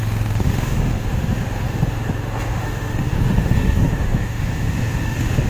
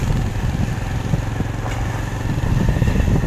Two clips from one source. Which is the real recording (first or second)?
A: second